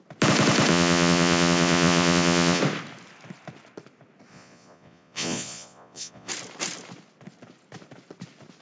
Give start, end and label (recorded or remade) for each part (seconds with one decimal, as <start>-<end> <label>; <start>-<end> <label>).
0.0-0.7 recorded; 0.7-2.6 remade; 2.6-4.3 recorded; 4.3-6.3 remade; 6.3-8.6 recorded